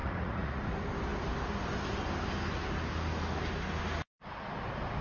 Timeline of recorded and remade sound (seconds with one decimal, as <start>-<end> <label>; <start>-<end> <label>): 0.0-0.6 remade; 0.6-5.0 recorded